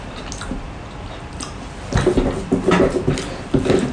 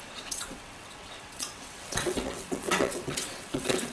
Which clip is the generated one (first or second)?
second